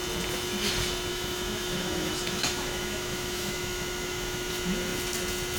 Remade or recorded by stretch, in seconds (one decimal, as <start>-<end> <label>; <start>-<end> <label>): 0.0-1.1 recorded; 1.1-4.5 remade; 4.5-5.6 recorded

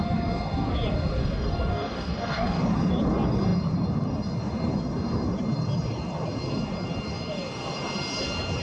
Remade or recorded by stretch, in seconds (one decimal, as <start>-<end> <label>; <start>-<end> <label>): 0.0-1.2 recorded; 1.2-2.7 remade; 2.7-8.6 recorded

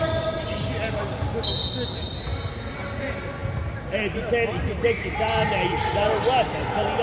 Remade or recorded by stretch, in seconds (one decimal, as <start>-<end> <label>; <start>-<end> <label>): 0.0-7.0 recorded

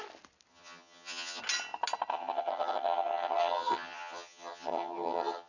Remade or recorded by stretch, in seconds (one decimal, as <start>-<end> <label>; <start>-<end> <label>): 0.0-0.5 recorded; 0.5-1.4 remade; 1.4-2.1 recorded; 2.1-5.5 remade

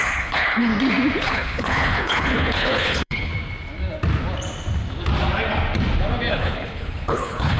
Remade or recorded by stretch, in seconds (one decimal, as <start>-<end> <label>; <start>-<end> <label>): 0.0-0.7 remade; 0.7-1.2 recorded; 1.2-3.3 remade; 3.3-6.3 recorded; 6.3-7.6 remade